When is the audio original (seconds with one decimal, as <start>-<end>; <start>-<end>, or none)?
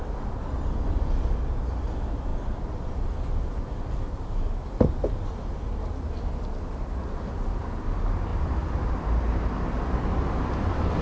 0.0-2.3; 2.9-8.3; 8.9-11.0